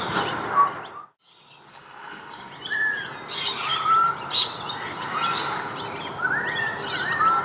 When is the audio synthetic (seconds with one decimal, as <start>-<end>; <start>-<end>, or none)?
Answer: 1.7-2.5